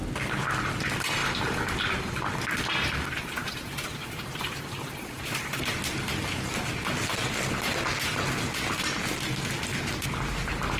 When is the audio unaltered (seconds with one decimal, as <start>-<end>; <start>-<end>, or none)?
0.0-3.4; 7.1-10.8